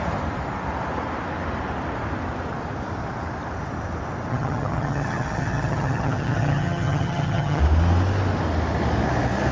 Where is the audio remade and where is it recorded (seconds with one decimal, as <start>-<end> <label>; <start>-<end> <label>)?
0.0-4.3 recorded; 4.3-7.6 remade; 7.6-9.5 recorded